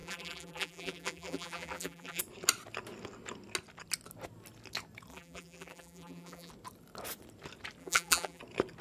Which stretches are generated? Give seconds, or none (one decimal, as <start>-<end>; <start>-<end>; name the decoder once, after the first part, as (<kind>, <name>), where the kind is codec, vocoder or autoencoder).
0.0-2.2 (vocoder, BigVGAN v2); 5.1-6.5; 7.8-8.4